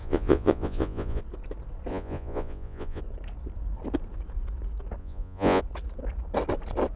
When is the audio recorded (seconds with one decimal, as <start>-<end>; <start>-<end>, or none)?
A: 1.2-1.9; 3.0-5.0; 5.6-7.0